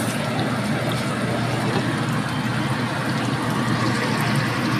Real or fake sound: real